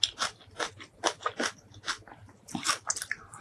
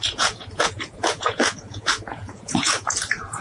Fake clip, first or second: second